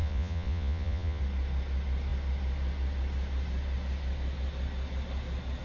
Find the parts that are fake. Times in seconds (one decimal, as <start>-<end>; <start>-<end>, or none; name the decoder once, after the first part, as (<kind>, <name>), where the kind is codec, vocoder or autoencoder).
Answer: 0.0-1.2 (vocoder, Vocos)